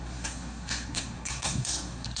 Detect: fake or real fake